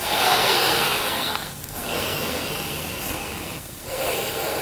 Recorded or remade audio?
remade